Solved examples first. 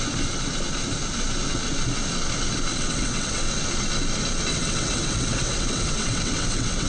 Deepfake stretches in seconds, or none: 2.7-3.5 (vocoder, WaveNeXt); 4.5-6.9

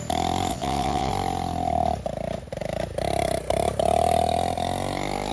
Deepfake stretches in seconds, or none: 0.5-1.1 (vocoder, WaveNeXt)

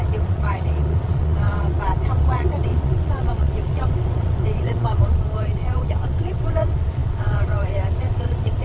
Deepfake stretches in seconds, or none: 0.0-8.6 (vocoder, WaveNeXt)

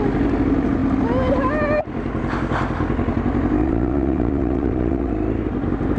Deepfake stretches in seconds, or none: 3.6-5.1 (vocoder, WaveNeXt)

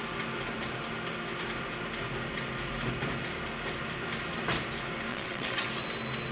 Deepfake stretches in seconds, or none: 5.1-5.7 (vocoder, WaveNeXt)

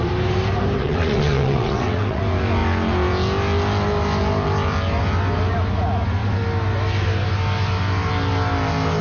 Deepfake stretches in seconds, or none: 0.8-2.2 (vocoder, WaveNeXt)